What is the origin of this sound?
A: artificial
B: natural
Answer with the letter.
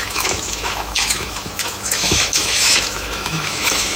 A